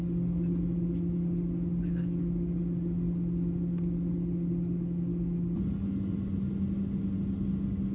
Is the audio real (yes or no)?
yes